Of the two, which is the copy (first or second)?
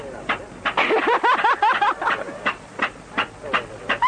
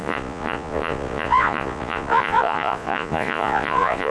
second